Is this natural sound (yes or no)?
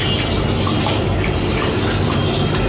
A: yes